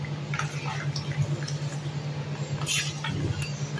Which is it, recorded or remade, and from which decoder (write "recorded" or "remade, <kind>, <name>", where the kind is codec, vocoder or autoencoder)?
recorded